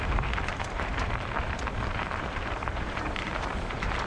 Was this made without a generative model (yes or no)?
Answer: no